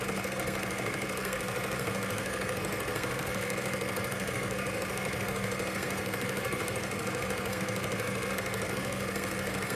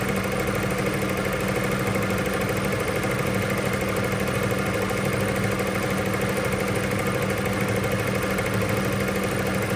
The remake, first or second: first